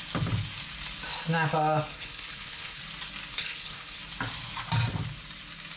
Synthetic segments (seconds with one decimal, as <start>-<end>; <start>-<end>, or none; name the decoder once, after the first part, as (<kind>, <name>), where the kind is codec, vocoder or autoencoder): 1.9-2.8 (codec, HILCodec); 3.3-4.0

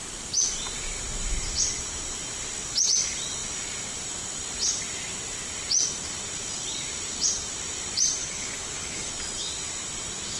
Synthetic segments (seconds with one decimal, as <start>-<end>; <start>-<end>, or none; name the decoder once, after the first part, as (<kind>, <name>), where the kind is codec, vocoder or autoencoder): 8.2-9.1 (codec, HILCodec)

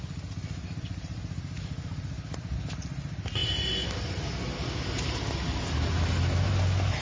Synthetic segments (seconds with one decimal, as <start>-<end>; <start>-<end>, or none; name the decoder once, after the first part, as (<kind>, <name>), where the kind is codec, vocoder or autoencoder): none

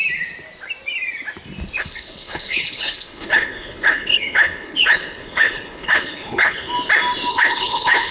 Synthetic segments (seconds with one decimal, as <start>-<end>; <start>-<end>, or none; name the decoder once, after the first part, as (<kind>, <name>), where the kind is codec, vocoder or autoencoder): 1.8-6.7 (codec, HILCodec); 7.3-8.1

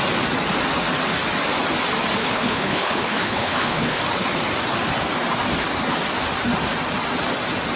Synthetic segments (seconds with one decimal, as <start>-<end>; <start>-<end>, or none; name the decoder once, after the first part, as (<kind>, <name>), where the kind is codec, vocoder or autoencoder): 2.2-4.0 (codec, HILCodec)